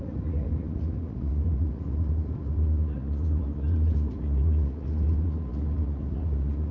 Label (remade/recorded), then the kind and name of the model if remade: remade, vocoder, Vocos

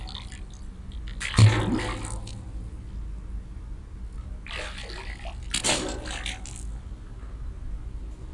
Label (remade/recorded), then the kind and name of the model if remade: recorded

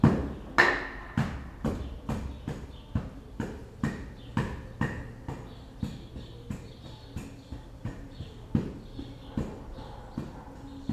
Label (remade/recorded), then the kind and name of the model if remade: recorded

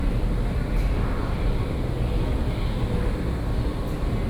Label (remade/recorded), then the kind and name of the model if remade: recorded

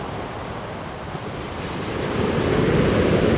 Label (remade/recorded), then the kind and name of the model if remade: recorded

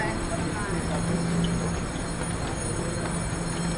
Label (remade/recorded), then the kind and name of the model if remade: recorded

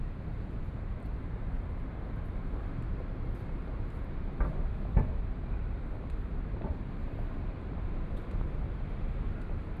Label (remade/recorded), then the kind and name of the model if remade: remade, vocoder, BigVGAN v2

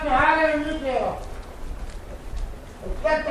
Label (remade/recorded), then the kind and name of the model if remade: recorded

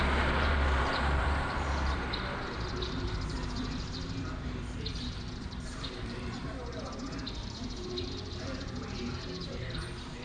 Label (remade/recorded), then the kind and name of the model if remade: remade, vocoder, BigVGAN v2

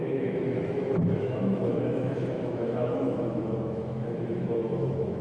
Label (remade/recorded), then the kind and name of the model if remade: remade, autoencoder, DAC-VAE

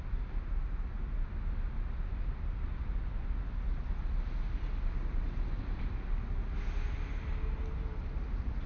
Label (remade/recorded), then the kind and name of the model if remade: recorded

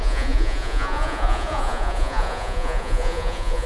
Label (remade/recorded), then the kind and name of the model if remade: remade, vocoder, Vocos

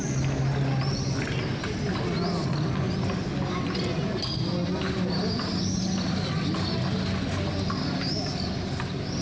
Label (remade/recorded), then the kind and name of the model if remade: recorded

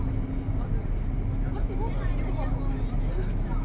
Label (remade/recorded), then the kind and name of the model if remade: recorded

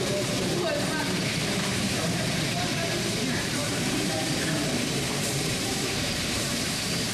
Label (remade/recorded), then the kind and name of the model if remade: remade, vocoder, BigVGAN v2